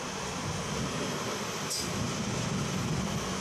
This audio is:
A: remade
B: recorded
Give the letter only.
B